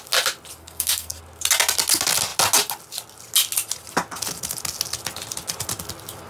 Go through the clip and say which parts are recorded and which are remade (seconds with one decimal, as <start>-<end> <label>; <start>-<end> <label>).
0.0-0.6 recorded; 0.6-1.2 remade; 1.2-6.3 recorded